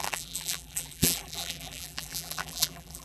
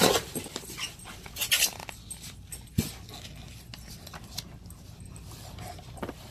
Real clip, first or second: second